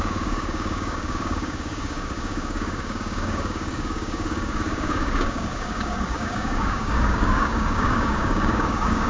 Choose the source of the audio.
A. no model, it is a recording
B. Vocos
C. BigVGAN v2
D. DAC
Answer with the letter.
D